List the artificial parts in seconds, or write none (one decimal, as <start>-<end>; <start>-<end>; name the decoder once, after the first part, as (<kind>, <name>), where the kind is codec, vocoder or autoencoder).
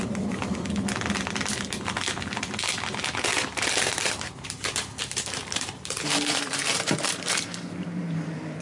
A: 3.3-8.6 (vocoder, BigVGAN v2)